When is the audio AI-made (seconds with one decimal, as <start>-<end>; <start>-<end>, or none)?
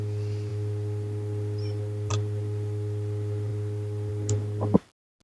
none